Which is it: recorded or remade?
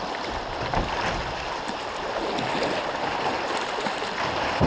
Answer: recorded